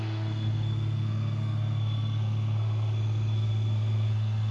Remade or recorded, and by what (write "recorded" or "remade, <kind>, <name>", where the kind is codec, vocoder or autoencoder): remade, codec, SNAC